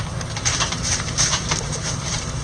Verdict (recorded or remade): remade